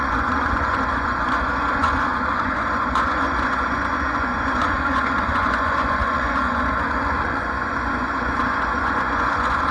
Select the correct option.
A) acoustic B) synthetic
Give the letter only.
B